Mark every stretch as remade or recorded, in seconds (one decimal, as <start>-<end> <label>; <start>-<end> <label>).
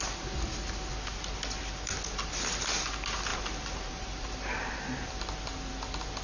0.0-3.3 recorded; 3.3-5.1 remade; 5.1-6.2 recorded